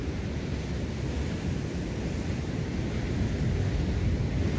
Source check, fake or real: real